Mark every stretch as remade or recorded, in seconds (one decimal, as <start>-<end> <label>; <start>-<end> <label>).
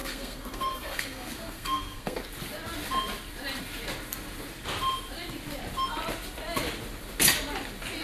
0.0-2.2 remade; 2.2-8.0 recorded